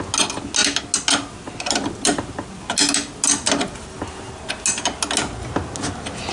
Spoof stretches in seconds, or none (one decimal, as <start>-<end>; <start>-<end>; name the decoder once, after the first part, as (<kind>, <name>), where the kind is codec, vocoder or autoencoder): none